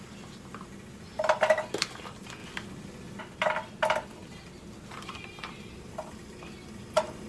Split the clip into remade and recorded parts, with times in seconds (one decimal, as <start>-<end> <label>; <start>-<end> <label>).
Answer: 0.0-7.3 recorded